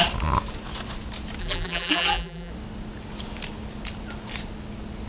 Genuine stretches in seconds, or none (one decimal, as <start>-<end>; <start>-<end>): 0.0-1.4; 2.5-5.1